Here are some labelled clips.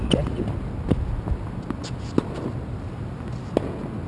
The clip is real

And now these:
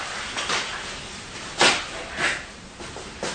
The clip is real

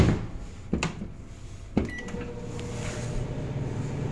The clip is real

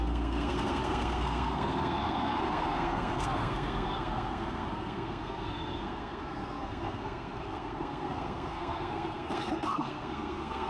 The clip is fake